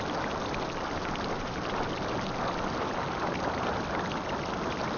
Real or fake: real